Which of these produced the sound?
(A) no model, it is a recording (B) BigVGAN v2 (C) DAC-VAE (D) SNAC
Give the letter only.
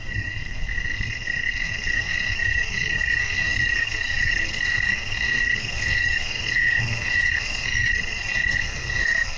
D